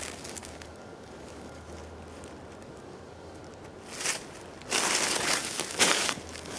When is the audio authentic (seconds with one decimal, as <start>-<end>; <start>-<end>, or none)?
1.8-2.6; 3.4-5.4